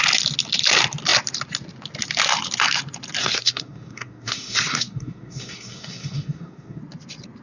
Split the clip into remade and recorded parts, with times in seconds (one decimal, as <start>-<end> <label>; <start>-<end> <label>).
0.0-3.2 recorded; 3.2-6.8 remade; 6.8-7.4 recorded